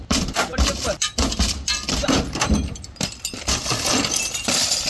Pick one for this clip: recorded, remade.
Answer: remade